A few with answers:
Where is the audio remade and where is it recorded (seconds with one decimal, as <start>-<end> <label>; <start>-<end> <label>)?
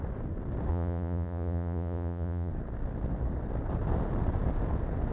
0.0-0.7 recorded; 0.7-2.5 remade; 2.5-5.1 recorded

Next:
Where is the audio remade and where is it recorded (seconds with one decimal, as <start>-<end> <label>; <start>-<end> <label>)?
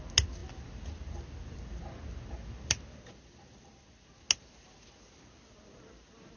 0.0-6.4 recorded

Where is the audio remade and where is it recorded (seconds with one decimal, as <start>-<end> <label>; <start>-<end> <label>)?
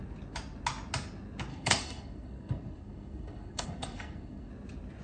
0.0-1.5 recorded; 1.5-4.5 remade; 4.5-5.0 recorded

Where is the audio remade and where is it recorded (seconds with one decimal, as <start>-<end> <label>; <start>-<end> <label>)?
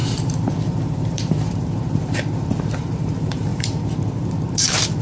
0.0-5.0 remade